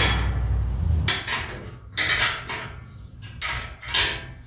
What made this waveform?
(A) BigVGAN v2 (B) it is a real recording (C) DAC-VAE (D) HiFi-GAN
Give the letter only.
B